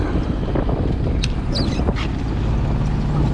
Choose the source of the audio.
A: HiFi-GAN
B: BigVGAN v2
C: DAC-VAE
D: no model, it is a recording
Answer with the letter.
D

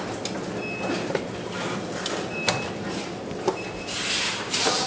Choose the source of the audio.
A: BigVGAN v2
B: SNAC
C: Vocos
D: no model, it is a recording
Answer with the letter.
D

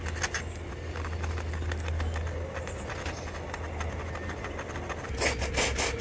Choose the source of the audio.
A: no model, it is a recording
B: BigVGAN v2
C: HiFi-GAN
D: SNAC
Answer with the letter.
A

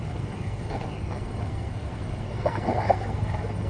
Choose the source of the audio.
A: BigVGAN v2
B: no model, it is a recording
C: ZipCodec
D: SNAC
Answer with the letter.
D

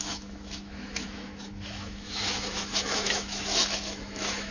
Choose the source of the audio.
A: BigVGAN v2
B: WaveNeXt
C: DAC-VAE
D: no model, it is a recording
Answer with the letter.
C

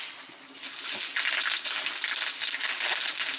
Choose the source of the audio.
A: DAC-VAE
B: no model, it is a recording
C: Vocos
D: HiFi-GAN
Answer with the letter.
B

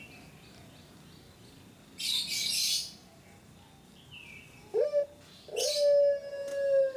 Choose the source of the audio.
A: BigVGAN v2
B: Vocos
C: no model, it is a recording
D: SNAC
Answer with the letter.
C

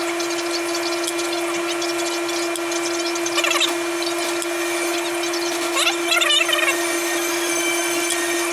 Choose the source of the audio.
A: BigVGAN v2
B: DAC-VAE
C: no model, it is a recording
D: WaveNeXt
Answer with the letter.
C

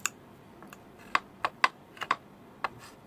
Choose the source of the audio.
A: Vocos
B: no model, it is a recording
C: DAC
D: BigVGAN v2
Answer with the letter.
B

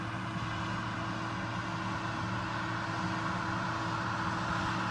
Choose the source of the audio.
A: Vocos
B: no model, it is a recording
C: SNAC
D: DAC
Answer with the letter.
B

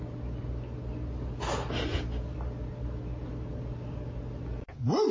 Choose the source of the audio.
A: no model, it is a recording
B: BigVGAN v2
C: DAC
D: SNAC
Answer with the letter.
A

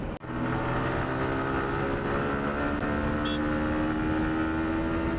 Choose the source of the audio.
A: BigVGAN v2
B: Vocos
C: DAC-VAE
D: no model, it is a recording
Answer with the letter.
D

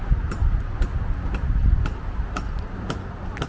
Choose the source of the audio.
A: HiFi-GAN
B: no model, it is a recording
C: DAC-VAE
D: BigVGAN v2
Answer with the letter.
D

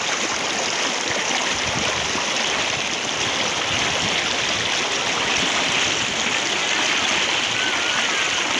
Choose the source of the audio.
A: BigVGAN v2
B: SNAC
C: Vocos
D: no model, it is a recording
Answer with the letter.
D